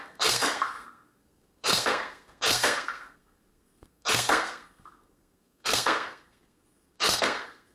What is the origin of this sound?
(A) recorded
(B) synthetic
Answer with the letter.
B